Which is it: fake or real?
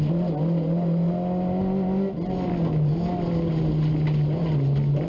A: real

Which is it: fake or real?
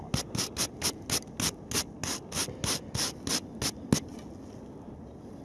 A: real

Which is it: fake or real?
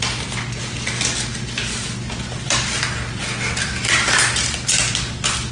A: real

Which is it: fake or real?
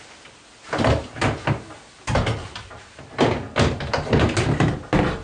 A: real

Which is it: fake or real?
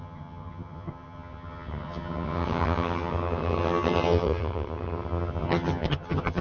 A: fake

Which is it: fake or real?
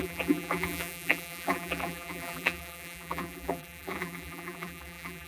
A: fake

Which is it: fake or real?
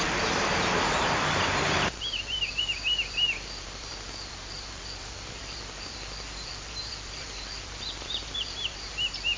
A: fake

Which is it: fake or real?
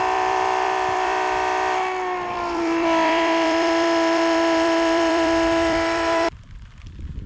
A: fake